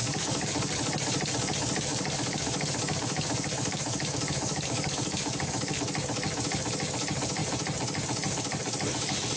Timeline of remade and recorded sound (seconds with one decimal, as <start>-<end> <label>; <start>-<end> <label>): 0.0-0.7 remade; 0.7-1.9 recorded; 1.9-5.8 remade; 5.8-9.4 recorded